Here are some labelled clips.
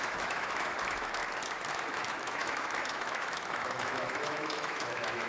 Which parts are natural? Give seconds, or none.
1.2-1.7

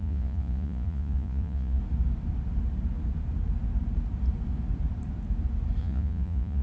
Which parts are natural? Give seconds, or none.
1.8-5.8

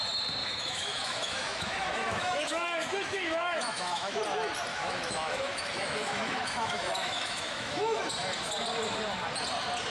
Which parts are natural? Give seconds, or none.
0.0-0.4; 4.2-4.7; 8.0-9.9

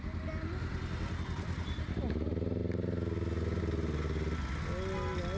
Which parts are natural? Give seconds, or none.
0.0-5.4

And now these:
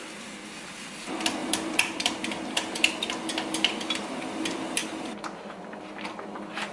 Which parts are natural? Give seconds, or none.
0.0-1.4; 3.0-6.7

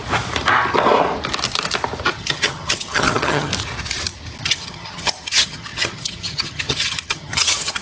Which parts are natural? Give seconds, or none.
0.0-2.1; 3.5-4.4